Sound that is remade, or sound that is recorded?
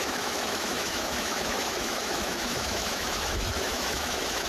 remade